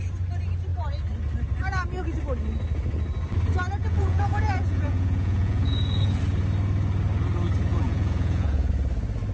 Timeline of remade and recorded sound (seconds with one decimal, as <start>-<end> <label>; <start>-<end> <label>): 0.0-3.8 recorded; 3.8-6.2 remade; 6.2-7.7 recorded; 7.7-8.7 remade; 8.7-9.3 recorded